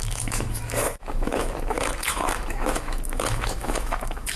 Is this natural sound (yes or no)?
no